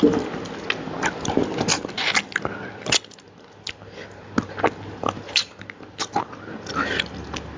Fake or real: real